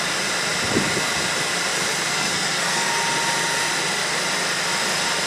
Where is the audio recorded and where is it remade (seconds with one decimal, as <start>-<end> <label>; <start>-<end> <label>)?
0.0-2.1 recorded; 2.1-2.9 remade; 2.9-5.3 recorded